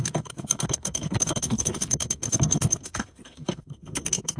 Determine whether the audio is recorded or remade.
remade